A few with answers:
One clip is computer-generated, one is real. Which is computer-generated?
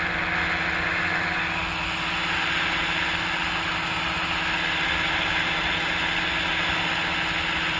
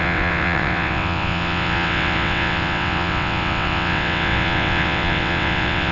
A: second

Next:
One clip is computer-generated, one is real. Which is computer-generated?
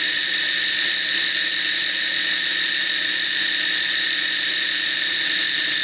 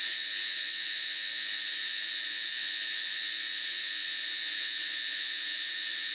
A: second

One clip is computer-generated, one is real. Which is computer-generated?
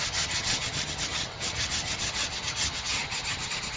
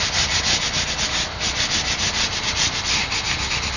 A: first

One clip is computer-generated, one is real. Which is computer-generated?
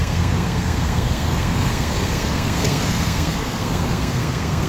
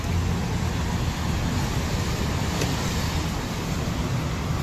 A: first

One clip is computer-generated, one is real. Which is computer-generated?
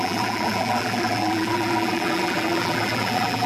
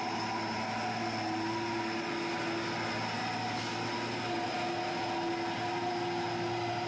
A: first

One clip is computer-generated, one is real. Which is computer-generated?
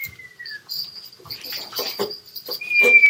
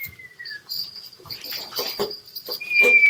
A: second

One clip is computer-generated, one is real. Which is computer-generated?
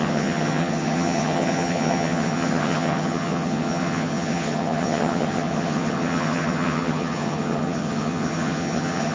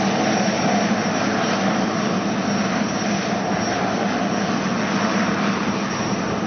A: first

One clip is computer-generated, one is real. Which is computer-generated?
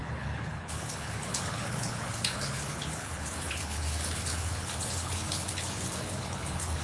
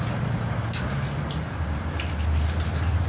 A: first